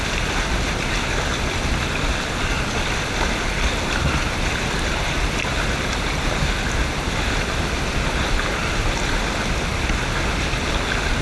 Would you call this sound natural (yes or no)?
yes